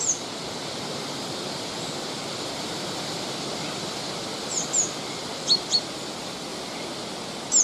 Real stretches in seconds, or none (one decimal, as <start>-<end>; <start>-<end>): 6.5-7.6